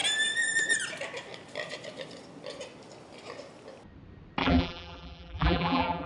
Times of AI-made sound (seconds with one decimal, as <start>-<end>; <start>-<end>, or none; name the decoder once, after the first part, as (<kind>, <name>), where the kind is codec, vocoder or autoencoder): 4.4-6.1 (vocoder, BigVGAN v2)